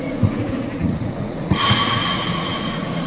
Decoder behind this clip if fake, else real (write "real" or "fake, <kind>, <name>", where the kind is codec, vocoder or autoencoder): fake, vocoder, Vocos